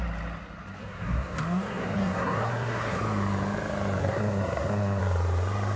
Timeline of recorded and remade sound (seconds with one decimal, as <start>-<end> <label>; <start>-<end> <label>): 0.0-0.8 recorded; 0.8-3.0 remade; 3.0-4.0 recorded; 4.0-5.0 remade; 5.0-5.8 recorded